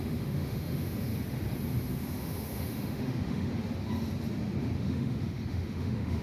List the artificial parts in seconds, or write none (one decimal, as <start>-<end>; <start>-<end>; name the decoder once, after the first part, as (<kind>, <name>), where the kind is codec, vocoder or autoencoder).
0.0-1.1 (autoencoder, DAC-VAE); 1.9-3.5; 4.8-6.2